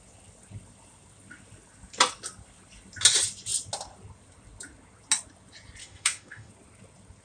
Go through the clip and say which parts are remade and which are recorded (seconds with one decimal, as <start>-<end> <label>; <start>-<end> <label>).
0.0-5.8 recorded; 5.8-6.5 remade; 6.5-7.2 recorded